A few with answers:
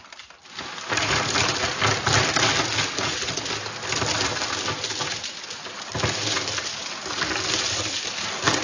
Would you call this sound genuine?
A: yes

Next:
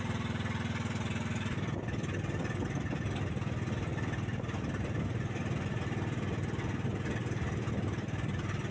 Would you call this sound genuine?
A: yes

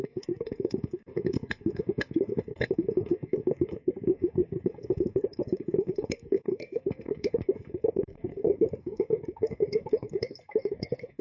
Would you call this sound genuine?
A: no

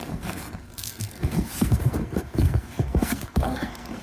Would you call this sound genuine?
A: no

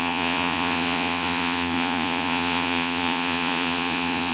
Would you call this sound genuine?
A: no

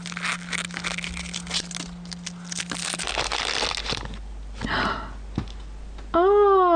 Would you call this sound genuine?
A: yes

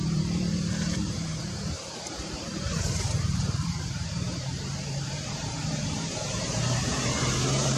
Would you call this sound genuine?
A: no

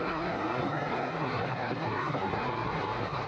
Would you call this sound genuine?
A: no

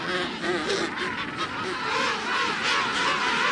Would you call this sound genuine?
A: yes